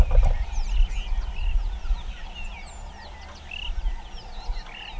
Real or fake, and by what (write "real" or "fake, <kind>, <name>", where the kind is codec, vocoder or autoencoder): real